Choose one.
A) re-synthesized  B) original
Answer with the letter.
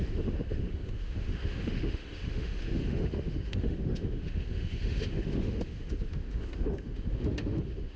A